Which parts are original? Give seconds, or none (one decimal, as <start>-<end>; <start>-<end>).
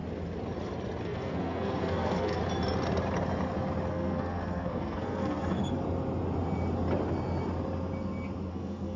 0.0-1.0; 2.4-3.9; 5.6-8.5